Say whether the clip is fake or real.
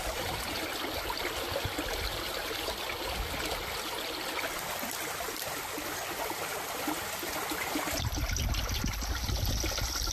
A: real